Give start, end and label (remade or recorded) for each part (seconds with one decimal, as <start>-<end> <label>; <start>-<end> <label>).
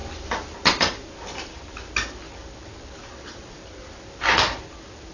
0.0-3.1 recorded; 3.1-3.6 remade; 3.6-5.1 recorded